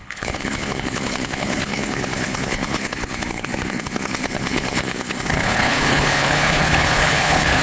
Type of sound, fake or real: fake